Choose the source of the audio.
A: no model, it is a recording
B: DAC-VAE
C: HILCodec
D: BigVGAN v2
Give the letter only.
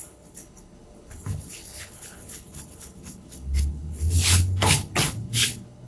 C